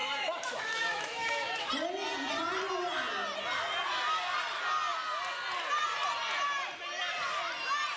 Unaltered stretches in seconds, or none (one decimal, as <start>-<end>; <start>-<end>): 1.7-8.0